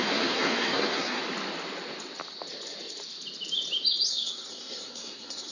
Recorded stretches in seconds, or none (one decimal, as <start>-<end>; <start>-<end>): 1.2-4.1